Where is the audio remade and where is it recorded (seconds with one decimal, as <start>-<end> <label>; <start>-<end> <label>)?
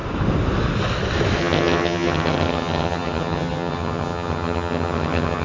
0.0-1.4 recorded; 1.4-5.4 remade